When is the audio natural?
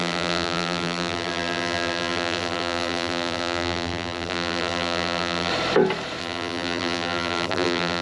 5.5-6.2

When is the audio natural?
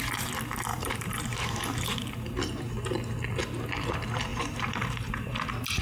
0.0-0.7; 2.6-4.3; 5.3-5.8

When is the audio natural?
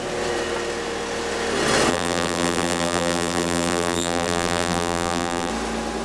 0.0-1.9; 5.5-6.0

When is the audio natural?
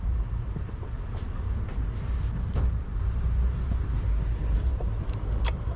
0.8-2.5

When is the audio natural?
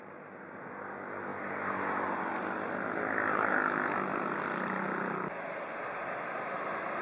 0.0-7.0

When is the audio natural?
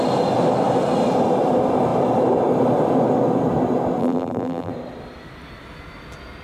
0.0-4.0; 4.7-6.4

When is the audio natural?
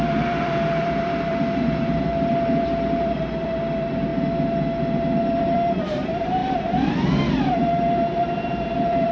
4.1-5.2; 6.4-7.3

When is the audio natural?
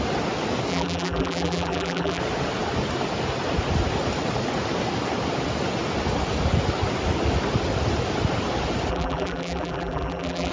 0.0-0.7; 2.2-8.9